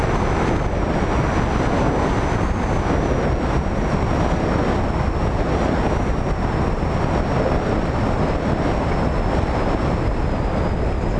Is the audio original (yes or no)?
yes